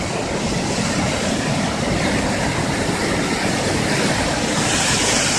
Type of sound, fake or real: real